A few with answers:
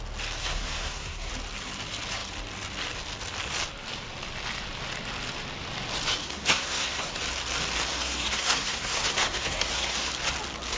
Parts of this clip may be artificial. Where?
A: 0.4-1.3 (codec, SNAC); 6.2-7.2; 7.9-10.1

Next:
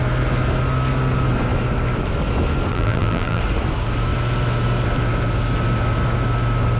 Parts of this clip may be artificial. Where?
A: 2.7-3.4 (vocoder, BigVGAN v2)